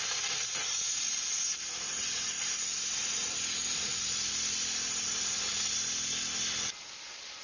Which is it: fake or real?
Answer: real